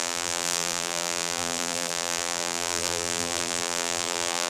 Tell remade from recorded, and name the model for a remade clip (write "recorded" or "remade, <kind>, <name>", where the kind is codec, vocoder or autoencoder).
remade, vocoder, BigVGAN v2